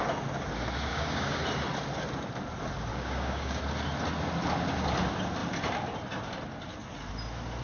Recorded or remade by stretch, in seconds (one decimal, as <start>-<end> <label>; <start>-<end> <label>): 0.0-0.9 recorded; 0.9-1.4 remade; 1.4-2.9 recorded; 2.9-3.6 remade; 3.6-7.6 recorded